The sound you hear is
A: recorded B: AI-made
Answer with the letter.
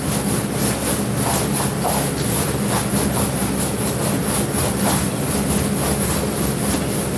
A